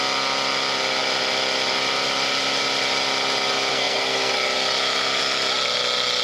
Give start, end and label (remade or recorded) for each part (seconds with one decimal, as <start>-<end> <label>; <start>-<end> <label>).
0.0-3.7 recorded; 3.7-4.3 remade; 4.3-6.2 recorded